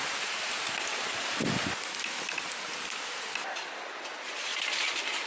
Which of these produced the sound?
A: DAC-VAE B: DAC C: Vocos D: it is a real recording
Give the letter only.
D